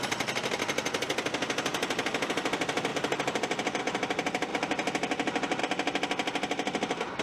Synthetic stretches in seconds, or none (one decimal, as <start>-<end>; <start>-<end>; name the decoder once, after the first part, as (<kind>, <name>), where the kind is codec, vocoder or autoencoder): 2.9-3.8 (vocoder, BigVGAN v2); 4.5-5.6